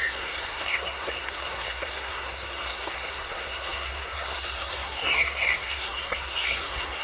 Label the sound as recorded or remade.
remade